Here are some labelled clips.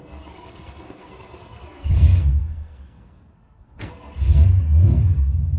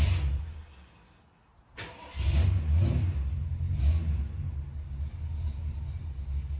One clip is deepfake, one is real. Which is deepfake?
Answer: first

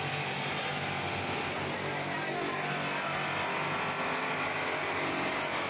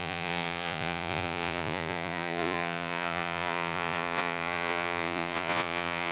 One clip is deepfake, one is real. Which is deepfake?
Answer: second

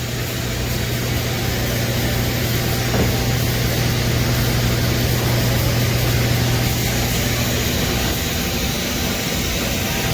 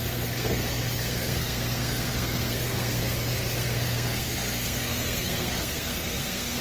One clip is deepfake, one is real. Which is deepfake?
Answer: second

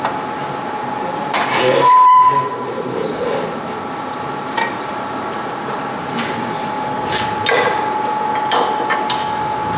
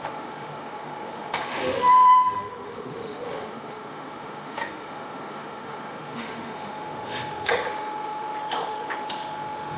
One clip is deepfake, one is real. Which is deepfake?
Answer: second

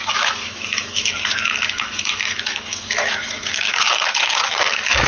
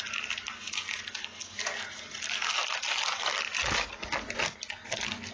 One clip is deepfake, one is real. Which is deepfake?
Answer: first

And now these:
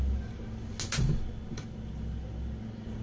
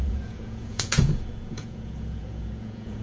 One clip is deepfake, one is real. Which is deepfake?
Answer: second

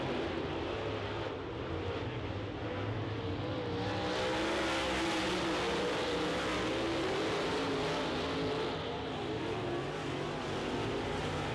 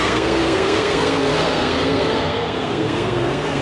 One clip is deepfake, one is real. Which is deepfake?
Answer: second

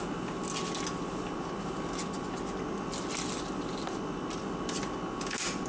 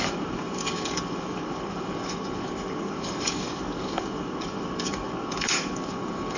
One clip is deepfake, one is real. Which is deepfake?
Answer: second